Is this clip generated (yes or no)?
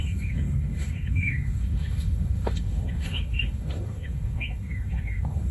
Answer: yes